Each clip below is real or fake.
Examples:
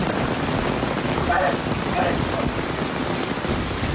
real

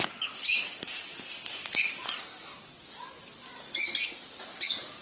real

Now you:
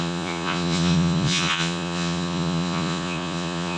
fake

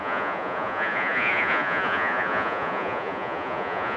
fake